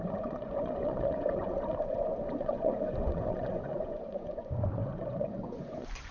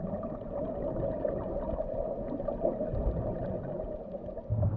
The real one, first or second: second